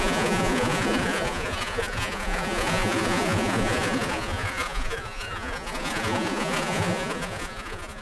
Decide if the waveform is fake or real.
fake